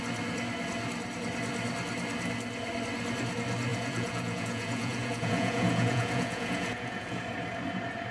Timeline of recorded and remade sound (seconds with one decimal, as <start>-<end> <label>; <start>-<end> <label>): 0.0-3.7 recorded; 3.7-7.2 remade; 7.2-8.1 recorded